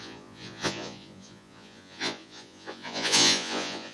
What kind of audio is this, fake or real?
fake